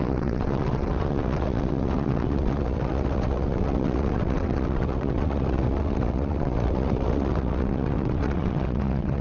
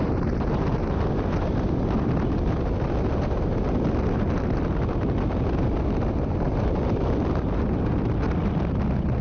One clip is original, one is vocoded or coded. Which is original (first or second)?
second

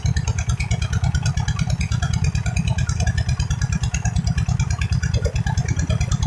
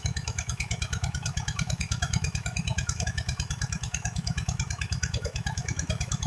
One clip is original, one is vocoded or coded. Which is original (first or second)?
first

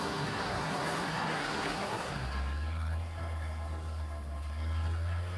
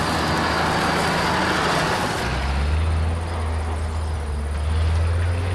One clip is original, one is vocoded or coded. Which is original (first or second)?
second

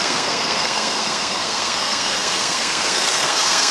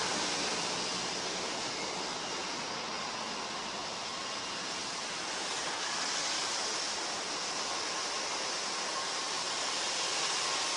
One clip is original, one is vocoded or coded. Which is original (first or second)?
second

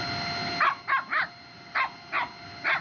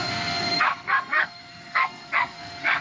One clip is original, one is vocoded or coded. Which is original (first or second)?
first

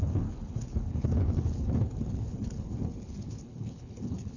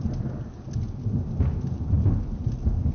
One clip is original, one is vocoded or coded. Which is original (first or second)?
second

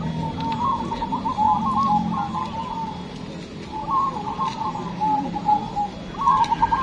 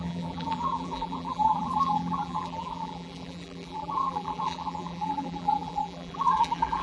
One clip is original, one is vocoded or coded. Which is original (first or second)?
first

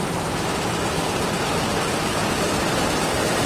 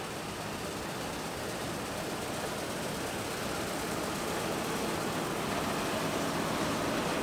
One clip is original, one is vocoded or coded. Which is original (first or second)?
second